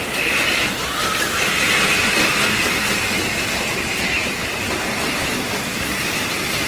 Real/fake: fake